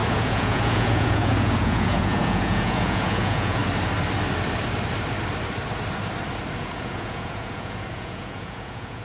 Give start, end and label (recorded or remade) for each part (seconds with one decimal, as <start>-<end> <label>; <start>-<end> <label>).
0.0-3.6 remade; 3.6-6.6 recorded; 6.6-9.0 remade